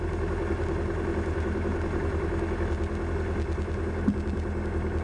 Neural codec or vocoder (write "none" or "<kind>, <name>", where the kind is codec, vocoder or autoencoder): none